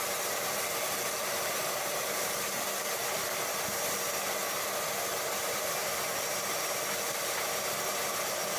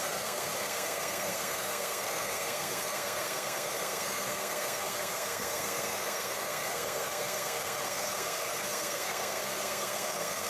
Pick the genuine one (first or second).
first